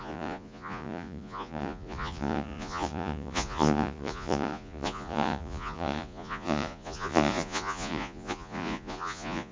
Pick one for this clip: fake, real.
fake